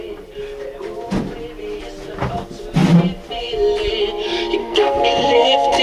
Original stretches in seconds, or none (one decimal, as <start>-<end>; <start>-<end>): 0.0-4.6